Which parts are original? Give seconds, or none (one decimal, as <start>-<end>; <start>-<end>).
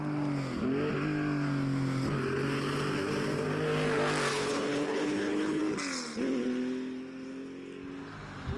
0.0-4.3; 5.6-8.6